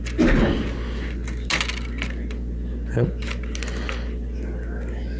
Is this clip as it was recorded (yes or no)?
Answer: yes